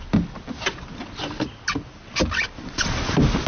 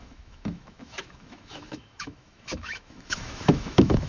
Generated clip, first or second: second